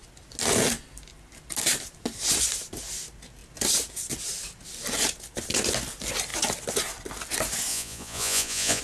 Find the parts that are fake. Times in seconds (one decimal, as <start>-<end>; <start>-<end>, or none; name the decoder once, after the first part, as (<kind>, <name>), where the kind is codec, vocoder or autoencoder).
7.7-8.8 (vocoder, Vocos)